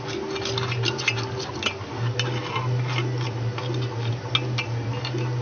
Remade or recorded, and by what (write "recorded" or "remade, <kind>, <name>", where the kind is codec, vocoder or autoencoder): recorded